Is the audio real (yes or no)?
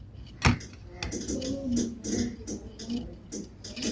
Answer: yes